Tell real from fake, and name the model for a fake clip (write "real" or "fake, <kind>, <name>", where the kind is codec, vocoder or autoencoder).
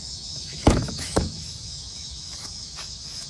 fake, autoencoder, DAC-VAE